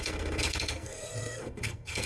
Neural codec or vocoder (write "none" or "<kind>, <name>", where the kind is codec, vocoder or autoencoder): codec, SNAC